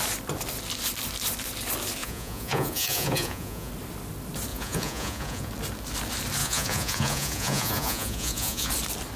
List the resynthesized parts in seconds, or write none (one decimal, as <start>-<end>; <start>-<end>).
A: 2.0-3.7; 4.5-5.5; 6.4-8.7